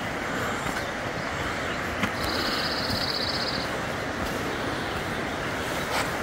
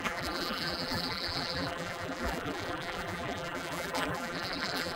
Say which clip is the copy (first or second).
second